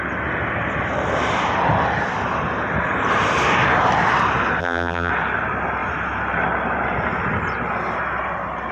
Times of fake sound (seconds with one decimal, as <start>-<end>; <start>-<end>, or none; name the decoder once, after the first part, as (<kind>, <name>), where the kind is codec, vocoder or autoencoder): 4.6-5.1 (vocoder, BigVGAN v2)